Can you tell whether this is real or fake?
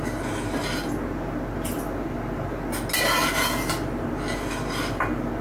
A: real